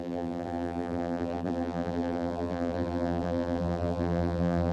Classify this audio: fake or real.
fake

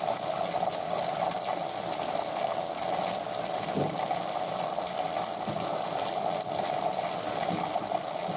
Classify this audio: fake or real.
fake